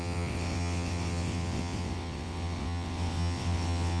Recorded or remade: remade